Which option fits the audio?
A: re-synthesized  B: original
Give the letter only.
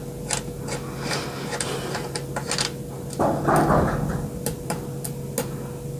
B